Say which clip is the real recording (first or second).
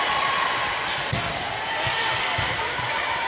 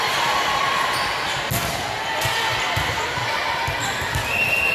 second